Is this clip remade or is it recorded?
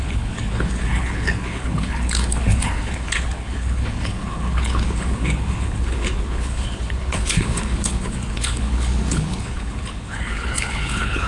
remade